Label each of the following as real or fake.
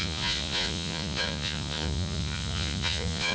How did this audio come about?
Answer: fake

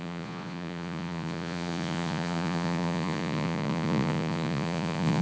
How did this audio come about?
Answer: fake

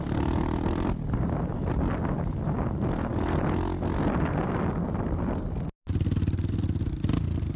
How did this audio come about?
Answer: real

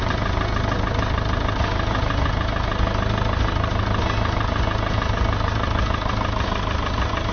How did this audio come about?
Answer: real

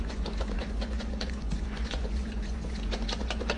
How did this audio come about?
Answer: fake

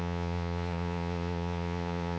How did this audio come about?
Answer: fake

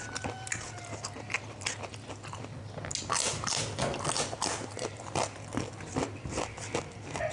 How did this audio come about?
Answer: real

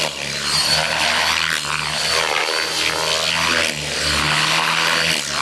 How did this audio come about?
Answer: real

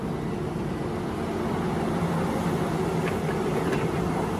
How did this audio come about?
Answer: real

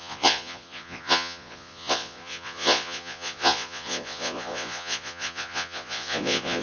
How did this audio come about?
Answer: fake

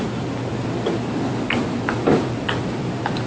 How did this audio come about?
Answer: real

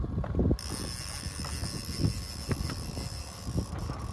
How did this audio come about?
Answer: real